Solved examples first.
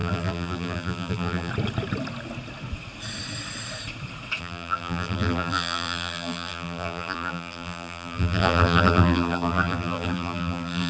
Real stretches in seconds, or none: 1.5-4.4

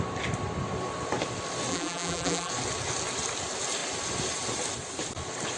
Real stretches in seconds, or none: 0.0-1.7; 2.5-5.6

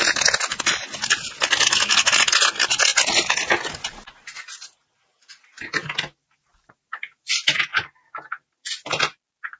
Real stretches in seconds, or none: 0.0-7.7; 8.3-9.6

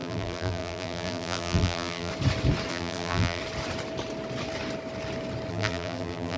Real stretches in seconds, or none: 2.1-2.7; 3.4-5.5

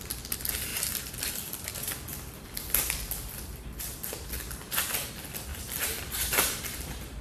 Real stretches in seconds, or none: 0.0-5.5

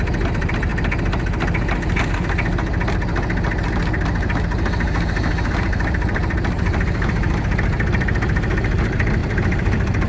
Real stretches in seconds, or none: 0.7-5.5